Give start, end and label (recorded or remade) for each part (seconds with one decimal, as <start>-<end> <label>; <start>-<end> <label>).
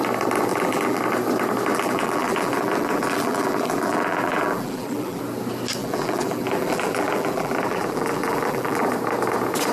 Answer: 0.0-0.5 recorded; 0.5-1.0 remade; 1.0-1.7 recorded; 1.7-5.2 remade; 5.2-5.8 recorded; 5.8-8.9 remade; 8.9-9.7 recorded